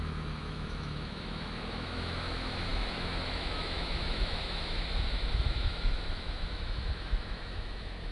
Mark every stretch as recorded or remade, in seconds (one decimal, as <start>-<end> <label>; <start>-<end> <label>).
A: 0.0-8.1 remade